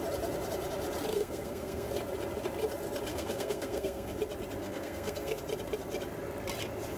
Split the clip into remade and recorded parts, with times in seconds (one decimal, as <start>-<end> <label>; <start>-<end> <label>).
0.0-1.1 recorded; 1.1-1.9 remade; 1.9-3.1 recorded; 3.1-4.1 remade; 4.1-4.6 recorded; 4.6-5.4 remade; 5.4-7.0 recorded